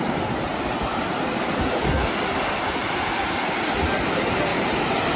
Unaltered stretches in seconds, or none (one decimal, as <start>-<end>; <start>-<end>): 0.0-4.5